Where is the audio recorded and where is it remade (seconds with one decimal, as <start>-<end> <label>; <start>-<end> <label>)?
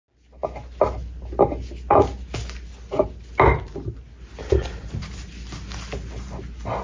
0.0-6.8 recorded